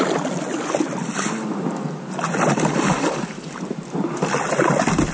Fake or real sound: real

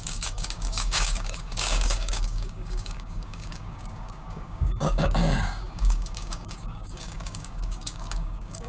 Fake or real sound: fake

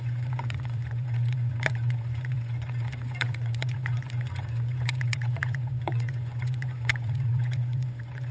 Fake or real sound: fake